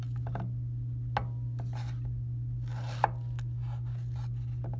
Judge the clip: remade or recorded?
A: recorded